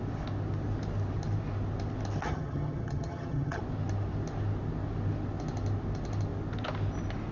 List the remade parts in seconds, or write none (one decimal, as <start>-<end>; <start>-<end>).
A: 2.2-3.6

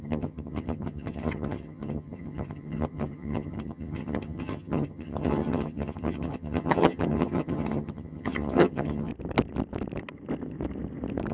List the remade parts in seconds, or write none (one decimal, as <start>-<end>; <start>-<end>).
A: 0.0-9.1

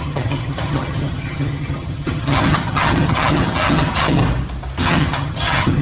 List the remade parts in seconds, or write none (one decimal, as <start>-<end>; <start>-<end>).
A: 0.0-4.2; 4.8-5.8

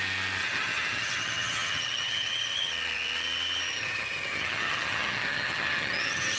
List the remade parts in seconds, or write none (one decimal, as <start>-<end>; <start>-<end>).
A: 0.4-2.7; 3.7-6.4